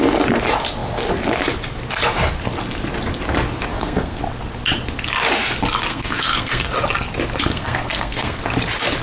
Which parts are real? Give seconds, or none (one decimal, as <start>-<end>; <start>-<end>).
0.0-3.7; 4.2-5.9; 6.7-7.5; 8.4-9.0